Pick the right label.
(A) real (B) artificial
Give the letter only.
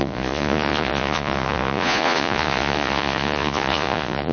B